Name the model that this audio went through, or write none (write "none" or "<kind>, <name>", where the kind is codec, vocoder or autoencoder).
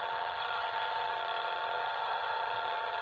vocoder, HiFi-GAN